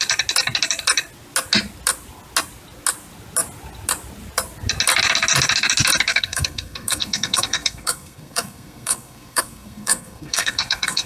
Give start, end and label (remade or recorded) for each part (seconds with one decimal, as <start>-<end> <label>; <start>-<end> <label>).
0.0-6.1 recorded; 6.1-11.1 remade

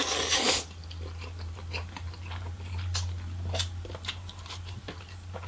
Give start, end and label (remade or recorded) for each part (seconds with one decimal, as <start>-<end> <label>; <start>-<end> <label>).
0.0-5.5 recorded